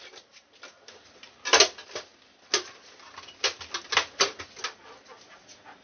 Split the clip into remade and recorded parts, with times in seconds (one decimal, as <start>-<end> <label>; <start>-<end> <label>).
0.0-5.8 recorded